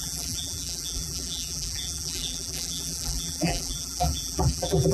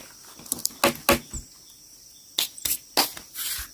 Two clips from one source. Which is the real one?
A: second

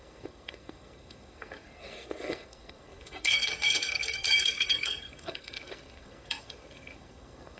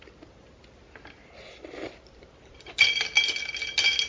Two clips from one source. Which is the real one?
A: second